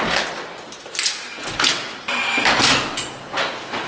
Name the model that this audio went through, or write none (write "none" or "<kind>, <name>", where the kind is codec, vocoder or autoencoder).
none